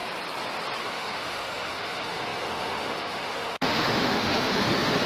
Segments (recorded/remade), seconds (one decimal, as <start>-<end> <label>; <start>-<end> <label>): 0.0-0.8 recorded; 0.8-5.1 remade